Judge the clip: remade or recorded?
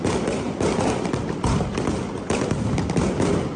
recorded